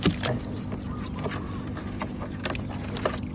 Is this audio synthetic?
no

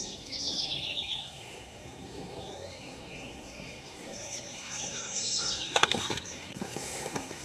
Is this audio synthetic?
yes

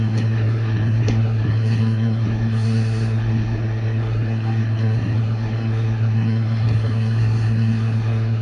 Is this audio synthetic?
yes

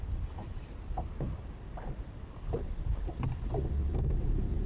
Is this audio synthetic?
no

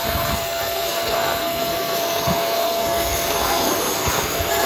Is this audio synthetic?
yes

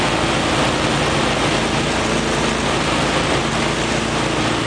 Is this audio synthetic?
no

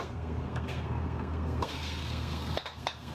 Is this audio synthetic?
yes